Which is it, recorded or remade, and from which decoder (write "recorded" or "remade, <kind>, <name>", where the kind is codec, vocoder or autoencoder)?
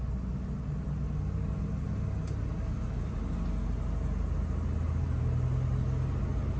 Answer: recorded